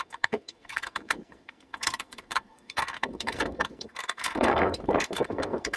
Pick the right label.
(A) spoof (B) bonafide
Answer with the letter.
A